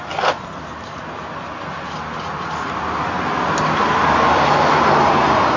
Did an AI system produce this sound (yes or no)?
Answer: no